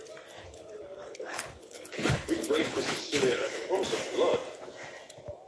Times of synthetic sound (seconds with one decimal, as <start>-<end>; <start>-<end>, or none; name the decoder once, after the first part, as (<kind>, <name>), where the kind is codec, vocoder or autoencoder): 0.4-3.7 (codec, HILCodec)